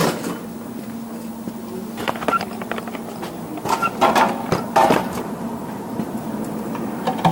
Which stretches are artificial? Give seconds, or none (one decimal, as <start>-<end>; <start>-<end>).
5.0-6.1